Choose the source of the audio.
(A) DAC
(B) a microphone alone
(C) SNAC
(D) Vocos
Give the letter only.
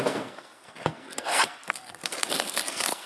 C